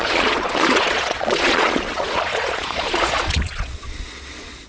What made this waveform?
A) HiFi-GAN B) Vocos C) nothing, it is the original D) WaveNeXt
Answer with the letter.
B